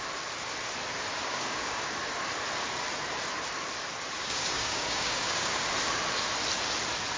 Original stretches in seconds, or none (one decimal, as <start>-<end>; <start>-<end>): 0.0-1.1; 1.9-4.2; 5.6-7.2